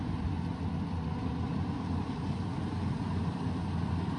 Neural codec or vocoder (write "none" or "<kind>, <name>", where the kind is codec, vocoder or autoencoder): vocoder, BigVGAN v2